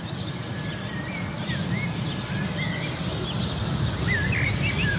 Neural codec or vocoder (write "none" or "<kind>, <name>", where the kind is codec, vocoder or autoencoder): none